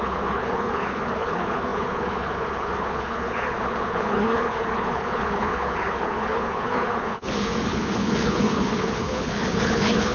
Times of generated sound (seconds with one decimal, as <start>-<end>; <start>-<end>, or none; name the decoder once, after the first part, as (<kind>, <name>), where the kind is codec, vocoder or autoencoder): 0.0-10.1 (codec, HILCodec)